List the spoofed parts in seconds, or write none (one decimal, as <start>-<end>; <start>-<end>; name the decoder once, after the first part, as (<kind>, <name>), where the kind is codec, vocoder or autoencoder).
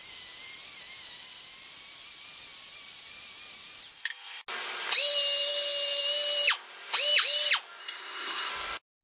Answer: 7.8-8.5 (codec, SNAC)